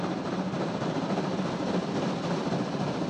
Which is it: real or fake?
real